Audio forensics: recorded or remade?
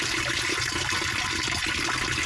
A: recorded